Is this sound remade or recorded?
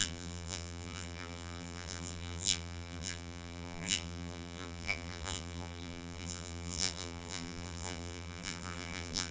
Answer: remade